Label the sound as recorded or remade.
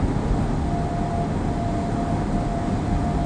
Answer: recorded